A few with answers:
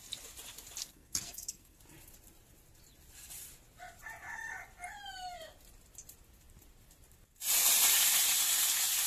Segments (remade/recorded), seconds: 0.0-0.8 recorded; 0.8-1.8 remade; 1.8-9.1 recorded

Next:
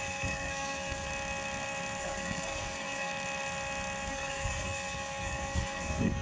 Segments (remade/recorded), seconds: 0.0-1.1 remade; 1.1-2.0 recorded; 2.0-3.1 remade; 3.1-4.1 recorded; 4.1-6.2 remade

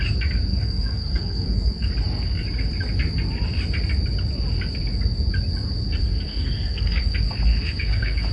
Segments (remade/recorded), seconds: 0.0-0.5 recorded; 0.5-1.9 remade; 1.9-6.0 recorded; 6.0-7.0 remade; 7.0-7.5 recorded; 7.5-8.3 remade

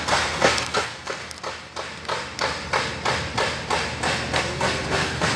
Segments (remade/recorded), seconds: 0.0-1.2 remade; 1.2-4.4 recorded; 4.4-5.4 remade